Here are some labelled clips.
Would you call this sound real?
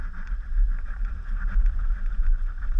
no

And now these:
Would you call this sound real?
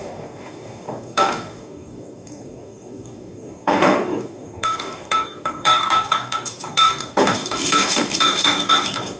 no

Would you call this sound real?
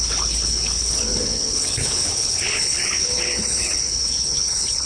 no